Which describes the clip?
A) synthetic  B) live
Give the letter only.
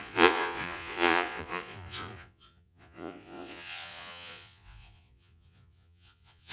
A